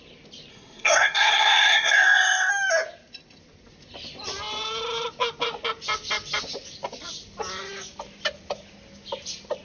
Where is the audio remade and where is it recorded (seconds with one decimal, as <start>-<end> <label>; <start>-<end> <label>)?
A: 0.0-0.5 recorded; 0.5-2.5 remade; 2.5-9.6 recorded

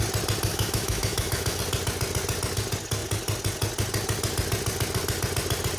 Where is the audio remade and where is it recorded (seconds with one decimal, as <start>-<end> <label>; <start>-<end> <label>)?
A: 0.0-0.5 recorded; 0.5-1.6 remade; 1.6-5.8 recorded

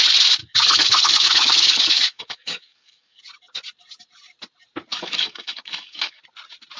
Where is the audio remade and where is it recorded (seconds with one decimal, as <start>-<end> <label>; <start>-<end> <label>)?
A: 0.0-0.4 recorded; 0.4-3.2 remade; 3.2-4.9 recorded; 4.9-6.2 remade; 6.2-6.8 recorded

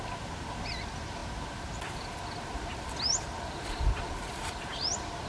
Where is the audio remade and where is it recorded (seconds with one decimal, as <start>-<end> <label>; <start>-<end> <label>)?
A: 0.0-5.3 recorded

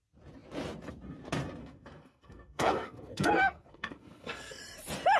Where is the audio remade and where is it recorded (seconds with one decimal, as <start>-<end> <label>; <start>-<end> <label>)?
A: 0.0-1.6 recorded; 1.6-4.6 remade; 4.6-5.2 recorded

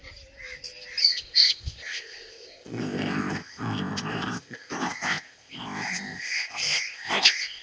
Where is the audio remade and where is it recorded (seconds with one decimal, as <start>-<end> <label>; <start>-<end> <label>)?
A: 0.0-1.0 recorded; 1.0-7.6 remade

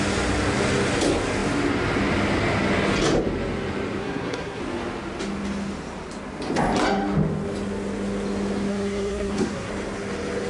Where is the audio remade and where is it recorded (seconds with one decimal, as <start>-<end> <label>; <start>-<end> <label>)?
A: 0.0-4.0 recorded; 4.0-4.6 remade; 4.6-8.7 recorded; 8.7-9.7 remade; 9.7-10.5 recorded